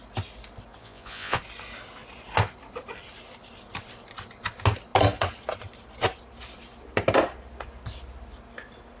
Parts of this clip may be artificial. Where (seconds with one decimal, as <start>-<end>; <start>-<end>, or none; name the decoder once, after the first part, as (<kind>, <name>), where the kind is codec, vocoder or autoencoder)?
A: 0.8-1.4 (vocoder, Vocos)